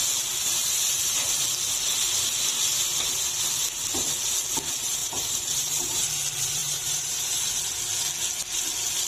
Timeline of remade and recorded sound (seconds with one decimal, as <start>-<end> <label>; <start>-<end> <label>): 0.0-5.0 recorded; 5.0-6.1 remade; 6.1-6.6 recorded; 6.6-7.5 remade; 7.5-9.1 recorded